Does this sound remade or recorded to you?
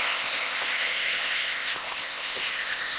remade